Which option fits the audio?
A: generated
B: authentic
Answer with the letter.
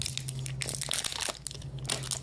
B